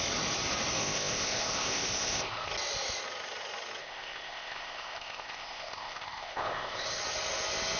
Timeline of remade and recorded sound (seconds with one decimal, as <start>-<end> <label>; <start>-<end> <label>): 0.0-0.8 recorded; 0.8-2.5 remade; 2.5-3.8 recorded; 3.8-7.0 remade; 7.0-7.8 recorded